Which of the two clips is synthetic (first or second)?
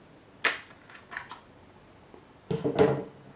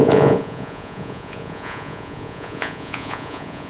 second